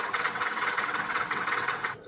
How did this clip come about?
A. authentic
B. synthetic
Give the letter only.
B